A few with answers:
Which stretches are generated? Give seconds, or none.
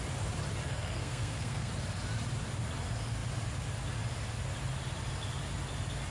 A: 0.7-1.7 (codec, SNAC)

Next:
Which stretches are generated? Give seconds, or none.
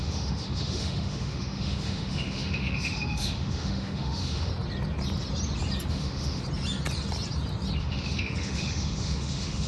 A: 0.0-4.5 (autoencoder, DAC-VAE); 5.9-6.4; 7.8-9.7